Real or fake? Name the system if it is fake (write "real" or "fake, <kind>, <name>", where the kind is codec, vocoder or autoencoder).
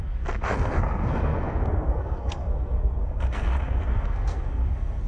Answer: fake, codec, SNAC